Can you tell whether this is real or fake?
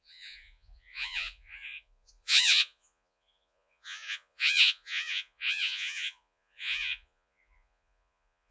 fake